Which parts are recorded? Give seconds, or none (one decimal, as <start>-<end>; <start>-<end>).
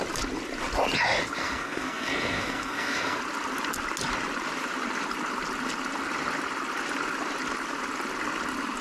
0.0-1.4; 3.2-8.8